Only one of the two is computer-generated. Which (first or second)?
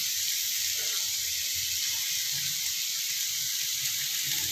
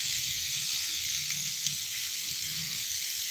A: second